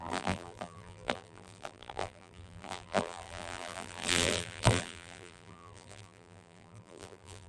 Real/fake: fake